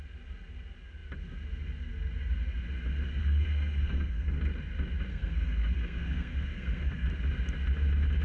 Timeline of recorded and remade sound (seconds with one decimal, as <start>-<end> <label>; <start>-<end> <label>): 0.0-3.2 recorded; 3.2-4.4 remade; 4.4-5.1 recorded; 5.1-7.1 remade; 7.1-8.2 recorded